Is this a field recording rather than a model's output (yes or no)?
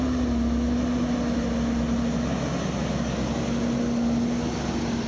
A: yes